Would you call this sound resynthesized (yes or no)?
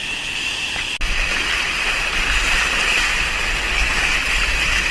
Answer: no